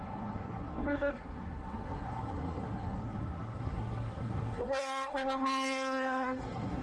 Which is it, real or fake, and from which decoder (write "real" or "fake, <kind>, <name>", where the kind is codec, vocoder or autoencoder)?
fake, codec, SNAC